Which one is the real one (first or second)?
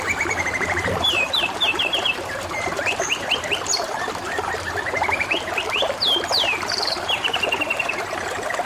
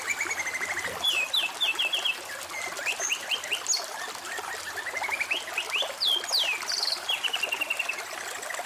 second